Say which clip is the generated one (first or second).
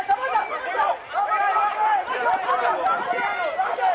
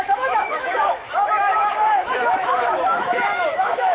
second